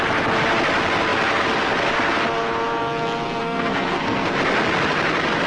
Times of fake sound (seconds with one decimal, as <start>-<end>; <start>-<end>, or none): 3.4-4.3

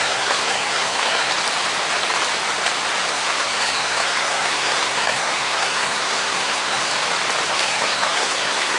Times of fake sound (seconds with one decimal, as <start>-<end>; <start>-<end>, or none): 0.0-1.3; 3.1-6.9; 7.5-8.8

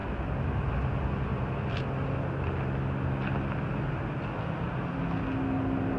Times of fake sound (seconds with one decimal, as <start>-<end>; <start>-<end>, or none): none

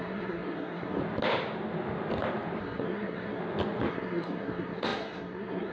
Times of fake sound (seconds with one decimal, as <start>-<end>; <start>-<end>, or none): 0.0-1.0; 2.6-3.4; 3.9-5.7

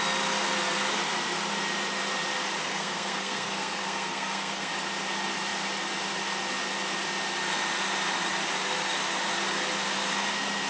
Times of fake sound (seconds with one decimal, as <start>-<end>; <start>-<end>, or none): 2.6-4.7

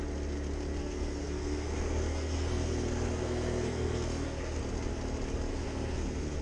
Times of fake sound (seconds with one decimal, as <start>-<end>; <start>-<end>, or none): 0.8-4.6; 5.5-6.4

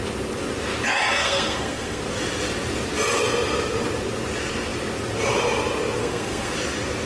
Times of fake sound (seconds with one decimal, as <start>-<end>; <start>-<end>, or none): 1.2-2.0; 6.0-6.5

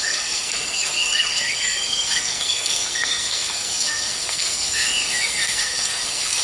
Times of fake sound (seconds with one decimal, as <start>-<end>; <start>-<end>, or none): 0.0-6.4